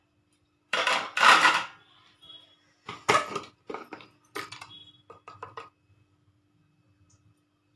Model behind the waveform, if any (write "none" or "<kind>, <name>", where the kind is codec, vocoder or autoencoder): vocoder, BigVGAN v2